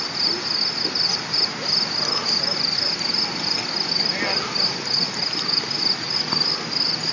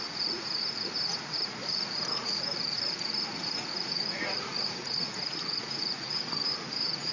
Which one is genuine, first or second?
first